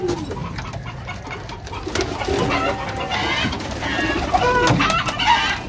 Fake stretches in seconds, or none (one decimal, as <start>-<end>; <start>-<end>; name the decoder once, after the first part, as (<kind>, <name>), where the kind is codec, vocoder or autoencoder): none